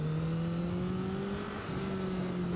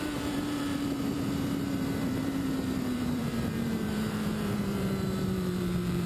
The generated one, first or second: second